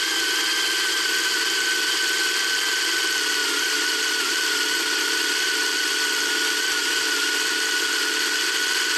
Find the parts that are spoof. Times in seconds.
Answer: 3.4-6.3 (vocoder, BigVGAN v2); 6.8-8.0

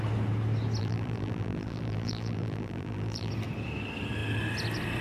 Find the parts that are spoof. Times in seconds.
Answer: 0.8-3.3 (vocoder, BigVGAN v2)

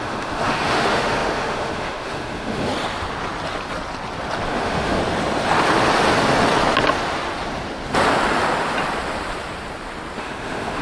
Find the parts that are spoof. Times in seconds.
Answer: 0.0-2.7 (autoencoder, DAC-VAE); 4.5-5.0; 10.2-10.8

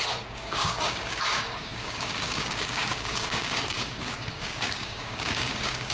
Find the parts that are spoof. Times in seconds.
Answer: 0.0-5.9 (codec, DAC)

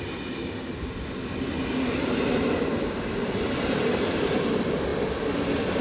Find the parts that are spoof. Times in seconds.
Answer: none

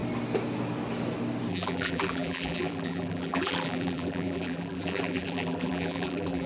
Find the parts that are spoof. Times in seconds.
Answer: 1.5-6.5 (vocoder, BigVGAN v2)